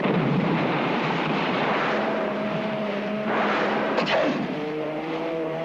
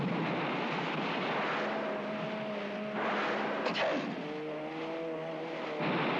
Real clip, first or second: second